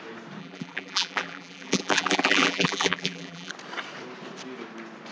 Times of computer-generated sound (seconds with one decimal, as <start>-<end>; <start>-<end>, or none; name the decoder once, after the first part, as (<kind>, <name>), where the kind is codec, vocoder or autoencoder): 0.4-3.5 (vocoder, BigVGAN v2)